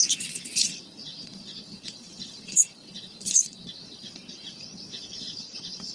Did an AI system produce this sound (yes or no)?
yes